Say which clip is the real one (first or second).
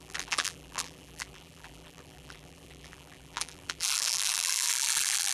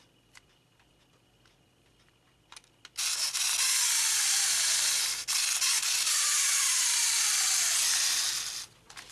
second